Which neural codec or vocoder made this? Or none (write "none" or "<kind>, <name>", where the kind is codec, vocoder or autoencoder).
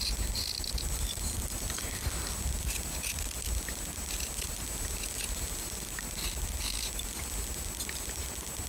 none